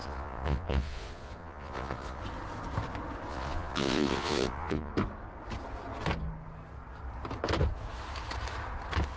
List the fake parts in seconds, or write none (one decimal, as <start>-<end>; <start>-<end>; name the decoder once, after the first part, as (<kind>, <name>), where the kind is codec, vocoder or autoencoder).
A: 0.0-2.2 (vocoder, Vocos); 3.3-4.9